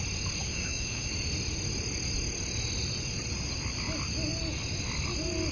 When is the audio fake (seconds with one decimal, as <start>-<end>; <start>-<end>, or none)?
0.4-1.1